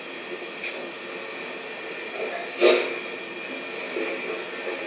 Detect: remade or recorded recorded